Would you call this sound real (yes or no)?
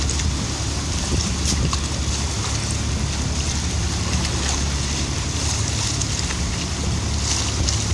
yes